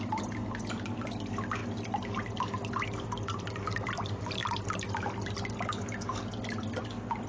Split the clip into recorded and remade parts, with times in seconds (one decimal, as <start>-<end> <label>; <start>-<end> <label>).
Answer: 0.0-7.3 recorded